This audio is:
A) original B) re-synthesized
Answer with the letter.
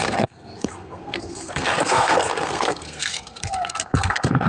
B